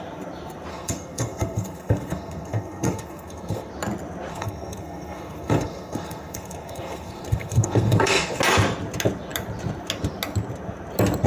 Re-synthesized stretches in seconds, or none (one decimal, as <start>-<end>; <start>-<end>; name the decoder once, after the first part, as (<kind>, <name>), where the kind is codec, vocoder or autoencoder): 0.7-3.7 (codec, SNAC); 4.3-8.4

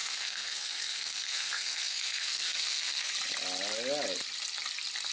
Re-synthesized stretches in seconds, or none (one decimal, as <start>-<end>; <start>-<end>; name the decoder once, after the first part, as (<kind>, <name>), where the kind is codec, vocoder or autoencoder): 0.0-3.1 (codec, SNAC)

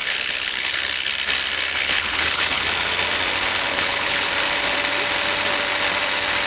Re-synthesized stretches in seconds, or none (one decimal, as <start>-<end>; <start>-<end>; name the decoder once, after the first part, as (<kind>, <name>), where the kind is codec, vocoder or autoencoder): 0.0-1.1 (codec, HILCodec); 1.8-2.6; 3.7-4.3

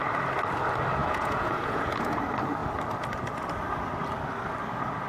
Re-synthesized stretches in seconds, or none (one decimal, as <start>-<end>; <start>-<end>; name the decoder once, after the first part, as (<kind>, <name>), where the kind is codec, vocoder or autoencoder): 1.0-2.2 (vocoder, Vocos)

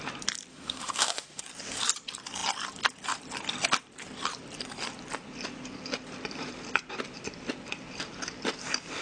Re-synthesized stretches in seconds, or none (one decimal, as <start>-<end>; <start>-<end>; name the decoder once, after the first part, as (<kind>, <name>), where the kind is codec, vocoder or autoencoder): 0.5-1.4 (autoencoder, DAC-VAE)